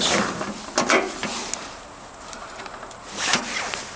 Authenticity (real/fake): real